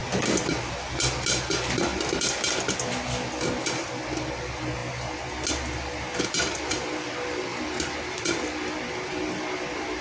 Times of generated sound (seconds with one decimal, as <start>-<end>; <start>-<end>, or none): none